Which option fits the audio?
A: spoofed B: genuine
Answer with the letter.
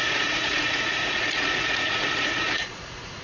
A